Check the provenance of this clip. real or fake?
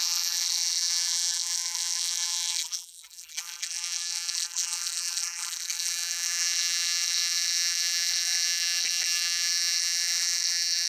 fake